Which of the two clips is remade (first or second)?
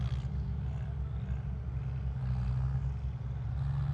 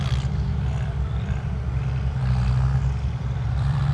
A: second